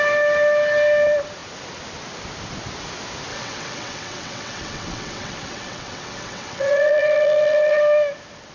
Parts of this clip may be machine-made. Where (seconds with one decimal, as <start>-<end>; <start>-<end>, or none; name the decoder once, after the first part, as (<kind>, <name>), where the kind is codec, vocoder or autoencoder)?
3.3-7.8 (vocoder, WaveNeXt)